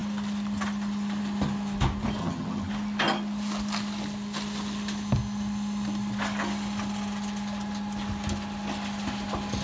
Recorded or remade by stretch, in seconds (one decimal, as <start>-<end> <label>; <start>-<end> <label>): 0.0-2.2 recorded; 2.2-2.7 remade; 2.7-9.6 recorded